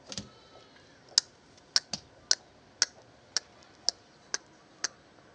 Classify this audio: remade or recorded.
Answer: recorded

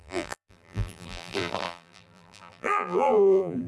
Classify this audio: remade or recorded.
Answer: remade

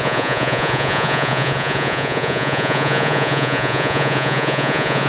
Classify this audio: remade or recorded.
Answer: remade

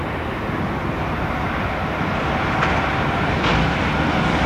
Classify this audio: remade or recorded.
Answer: recorded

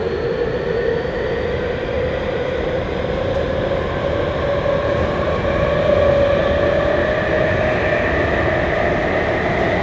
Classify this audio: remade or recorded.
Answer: recorded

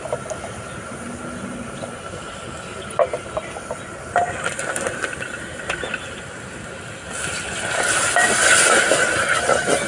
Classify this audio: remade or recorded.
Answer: recorded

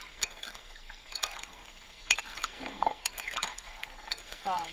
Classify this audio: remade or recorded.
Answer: remade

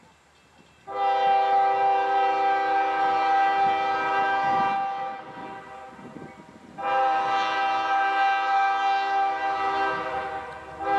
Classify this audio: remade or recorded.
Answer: recorded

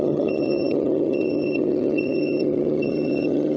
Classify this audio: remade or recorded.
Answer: remade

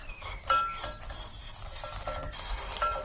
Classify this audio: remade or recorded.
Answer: recorded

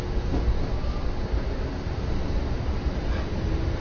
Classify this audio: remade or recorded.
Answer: recorded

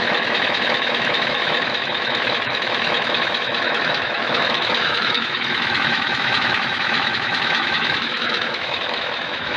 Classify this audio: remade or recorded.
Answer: remade